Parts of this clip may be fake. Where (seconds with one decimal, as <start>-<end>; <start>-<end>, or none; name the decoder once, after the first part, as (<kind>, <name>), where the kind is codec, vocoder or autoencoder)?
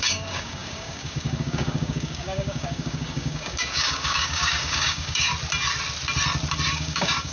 0.0-5.3 (codec, DAC); 6.7-7.3